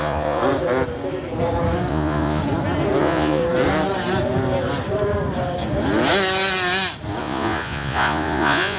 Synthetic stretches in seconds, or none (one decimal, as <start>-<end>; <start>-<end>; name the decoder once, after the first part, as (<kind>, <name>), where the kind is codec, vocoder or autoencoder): 0.0-0.4 (vocoder, Vocos); 1.9-2.4; 3.0-3.4; 7.2-8.8